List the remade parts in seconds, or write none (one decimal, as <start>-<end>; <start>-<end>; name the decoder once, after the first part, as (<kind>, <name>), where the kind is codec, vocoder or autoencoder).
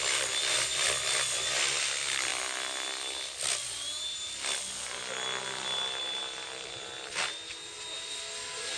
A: none